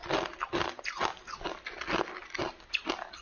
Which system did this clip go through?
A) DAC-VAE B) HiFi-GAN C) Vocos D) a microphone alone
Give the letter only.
D